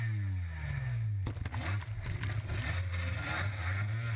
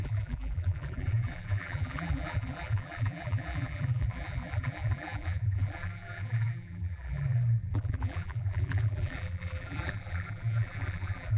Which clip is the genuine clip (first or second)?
first